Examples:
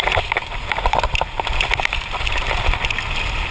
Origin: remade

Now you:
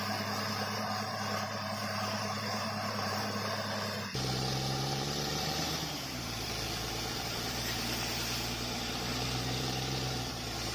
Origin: remade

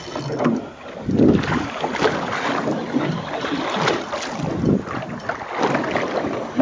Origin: recorded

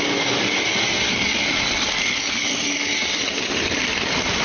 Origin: recorded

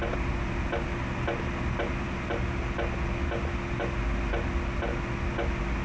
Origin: recorded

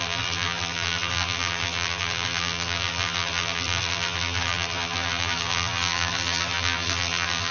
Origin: remade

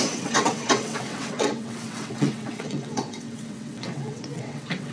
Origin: remade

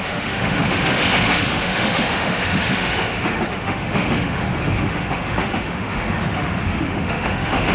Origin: remade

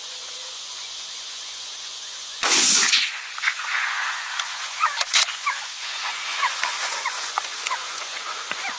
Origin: remade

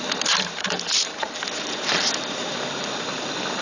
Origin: remade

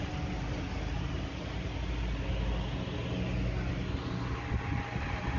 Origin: recorded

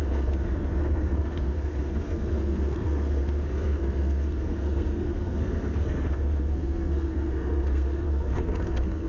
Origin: remade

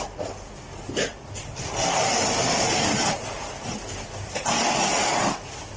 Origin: remade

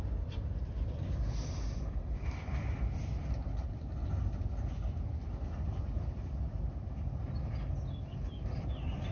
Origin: recorded